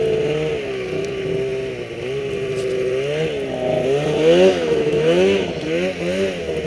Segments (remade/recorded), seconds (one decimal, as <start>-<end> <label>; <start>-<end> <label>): 0.0-4.5 recorded; 4.5-5.4 remade; 5.4-6.7 recorded